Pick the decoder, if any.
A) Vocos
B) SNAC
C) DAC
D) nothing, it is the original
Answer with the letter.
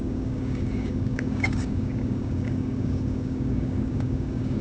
C